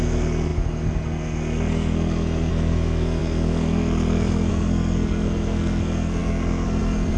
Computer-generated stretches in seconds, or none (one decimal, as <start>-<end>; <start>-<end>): 0.0-7.2